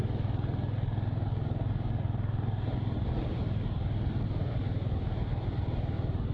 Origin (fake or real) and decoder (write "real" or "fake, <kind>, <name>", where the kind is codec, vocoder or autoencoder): real